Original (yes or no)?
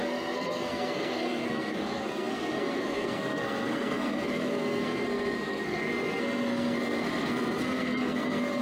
no